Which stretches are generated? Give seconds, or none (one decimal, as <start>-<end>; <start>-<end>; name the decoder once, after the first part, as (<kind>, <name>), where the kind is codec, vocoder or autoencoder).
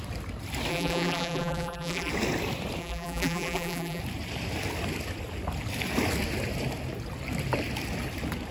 0.7-2.1 (vocoder, BigVGAN v2); 2.8-4.0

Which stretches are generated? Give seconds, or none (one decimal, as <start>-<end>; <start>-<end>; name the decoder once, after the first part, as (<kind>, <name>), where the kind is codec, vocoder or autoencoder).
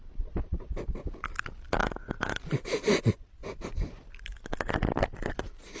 none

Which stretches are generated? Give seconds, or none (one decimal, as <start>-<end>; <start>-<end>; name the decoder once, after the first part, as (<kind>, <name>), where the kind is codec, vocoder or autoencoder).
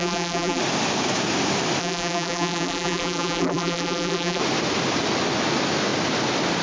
0.0-0.6 (vocoder, BigVGAN v2); 1.8-4.4